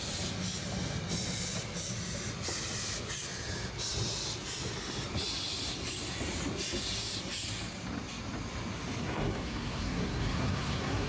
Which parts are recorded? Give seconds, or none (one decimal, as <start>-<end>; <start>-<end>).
0.0-9.0